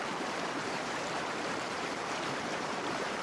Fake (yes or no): yes